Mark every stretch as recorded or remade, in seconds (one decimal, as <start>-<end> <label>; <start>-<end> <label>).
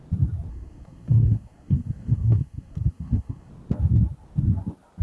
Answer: 0.0-0.5 recorded; 0.5-3.5 remade; 3.5-5.0 recorded